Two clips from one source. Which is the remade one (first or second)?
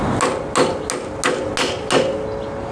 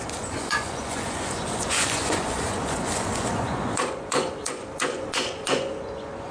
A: second